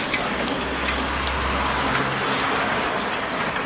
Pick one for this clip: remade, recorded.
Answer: recorded